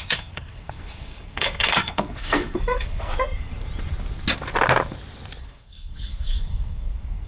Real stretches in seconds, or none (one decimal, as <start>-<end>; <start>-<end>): 3.5-5.4